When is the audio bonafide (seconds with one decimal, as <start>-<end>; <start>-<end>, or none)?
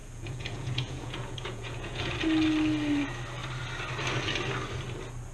2.1-5.3